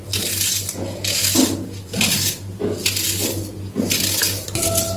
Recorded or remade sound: recorded